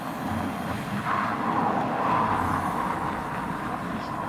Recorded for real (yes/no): yes